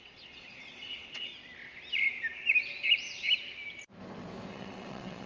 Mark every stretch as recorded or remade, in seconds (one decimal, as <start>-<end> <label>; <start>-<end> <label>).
0.0-1.3 remade; 1.3-4.5 recorded; 4.5-5.3 remade